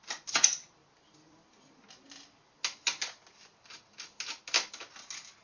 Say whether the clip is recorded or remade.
recorded